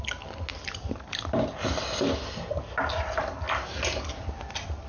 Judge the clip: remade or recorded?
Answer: recorded